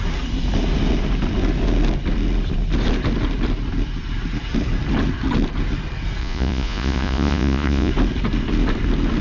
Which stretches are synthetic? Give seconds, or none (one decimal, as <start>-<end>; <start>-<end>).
6.2-7.9